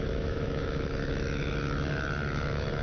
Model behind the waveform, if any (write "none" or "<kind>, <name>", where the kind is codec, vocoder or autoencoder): autoencoder, DAC-VAE